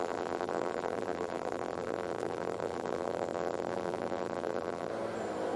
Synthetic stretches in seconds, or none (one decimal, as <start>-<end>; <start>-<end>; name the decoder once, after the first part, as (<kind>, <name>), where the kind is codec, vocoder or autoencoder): 0.0-4.9 (vocoder, BigVGAN v2)